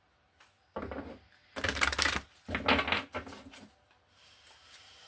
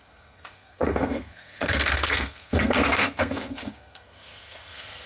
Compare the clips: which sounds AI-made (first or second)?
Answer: second